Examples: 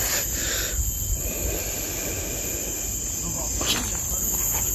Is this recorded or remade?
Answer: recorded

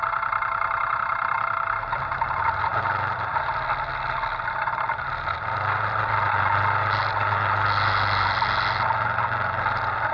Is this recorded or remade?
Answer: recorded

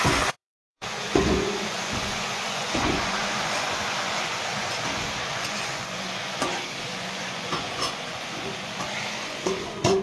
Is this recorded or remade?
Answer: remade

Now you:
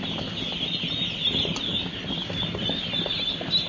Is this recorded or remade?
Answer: recorded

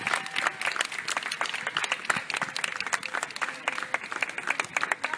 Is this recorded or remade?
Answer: recorded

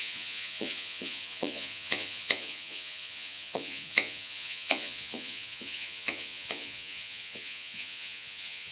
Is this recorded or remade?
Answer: remade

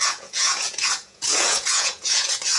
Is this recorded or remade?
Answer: remade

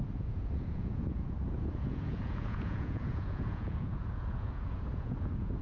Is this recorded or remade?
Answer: remade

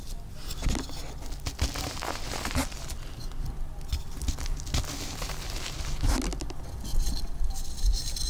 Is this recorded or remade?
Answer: recorded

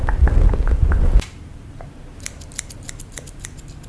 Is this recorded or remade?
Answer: recorded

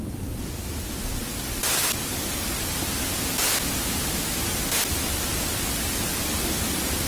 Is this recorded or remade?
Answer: recorded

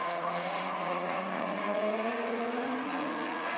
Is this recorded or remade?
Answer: remade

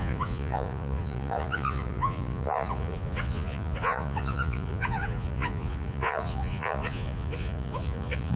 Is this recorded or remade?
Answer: remade